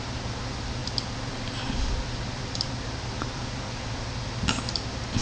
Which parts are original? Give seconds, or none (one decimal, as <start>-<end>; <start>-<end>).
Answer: 0.0-0.8; 3.9-5.2

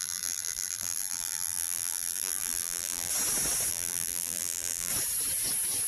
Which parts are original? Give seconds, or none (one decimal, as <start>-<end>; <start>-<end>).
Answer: 3.1-3.7; 4.9-5.9

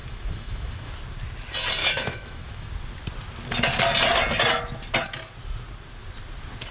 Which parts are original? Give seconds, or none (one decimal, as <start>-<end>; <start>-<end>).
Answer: 0.9-1.8; 2.7-6.7

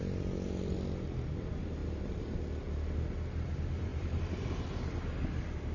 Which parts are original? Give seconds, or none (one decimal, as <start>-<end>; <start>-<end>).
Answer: 0.0-1.8; 2.4-3.9; 4.6-5.7